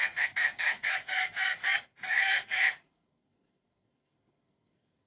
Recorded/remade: remade